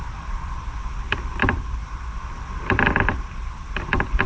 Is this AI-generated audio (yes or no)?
yes